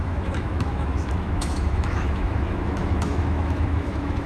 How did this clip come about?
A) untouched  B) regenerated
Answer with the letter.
B